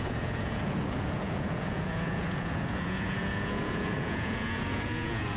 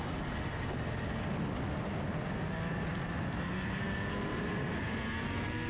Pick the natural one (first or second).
second